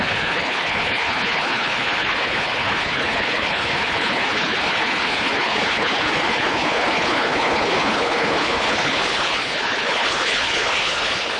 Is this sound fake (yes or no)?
yes